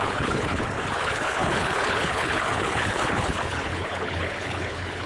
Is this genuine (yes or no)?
no